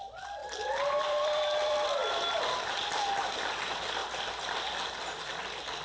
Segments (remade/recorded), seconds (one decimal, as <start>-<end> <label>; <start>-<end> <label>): 0.0-2.0 remade; 2.0-2.9 recorded; 2.9-4.0 remade; 4.0-4.9 recorded; 4.9-5.8 remade